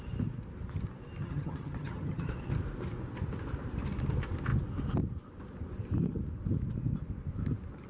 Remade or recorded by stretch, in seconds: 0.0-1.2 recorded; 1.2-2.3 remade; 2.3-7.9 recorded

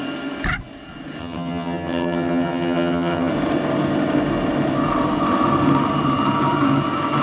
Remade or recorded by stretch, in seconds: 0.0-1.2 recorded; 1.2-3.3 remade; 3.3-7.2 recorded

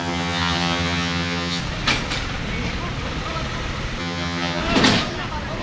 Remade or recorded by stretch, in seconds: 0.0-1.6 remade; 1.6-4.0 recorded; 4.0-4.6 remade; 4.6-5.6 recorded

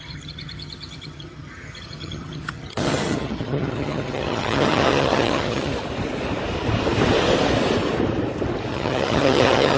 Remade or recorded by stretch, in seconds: 0.0-5.7 remade; 5.7-8.7 recorded; 8.7-9.8 remade

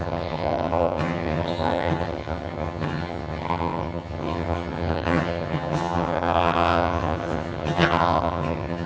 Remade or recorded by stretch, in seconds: 0.0-8.9 remade